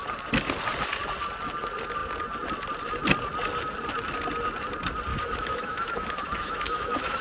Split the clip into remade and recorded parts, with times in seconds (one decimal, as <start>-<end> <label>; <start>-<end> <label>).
0.0-5.1 recorded; 5.1-7.2 remade